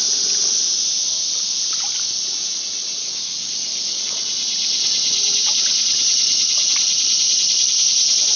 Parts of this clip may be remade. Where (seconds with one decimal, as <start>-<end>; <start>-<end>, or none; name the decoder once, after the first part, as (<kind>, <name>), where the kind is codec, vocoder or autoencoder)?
3.0-4.0 (codec, DAC)